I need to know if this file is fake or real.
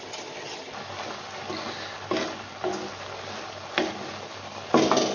real